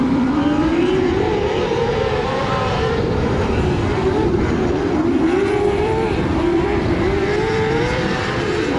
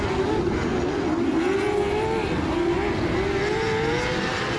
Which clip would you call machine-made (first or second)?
first